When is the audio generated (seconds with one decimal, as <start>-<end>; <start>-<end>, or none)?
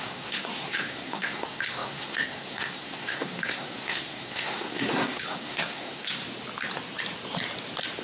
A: 0.0-6.2